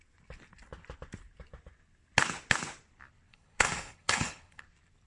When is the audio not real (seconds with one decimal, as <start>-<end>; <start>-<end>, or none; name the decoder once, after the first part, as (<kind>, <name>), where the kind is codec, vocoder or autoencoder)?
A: 3.3-4.6 (codec, HILCodec)